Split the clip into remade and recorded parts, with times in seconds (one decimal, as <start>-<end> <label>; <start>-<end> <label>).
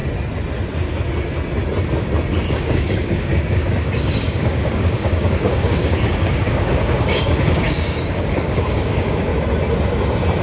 0.0-2.5 recorded; 2.5-9.3 remade; 9.3-10.4 recorded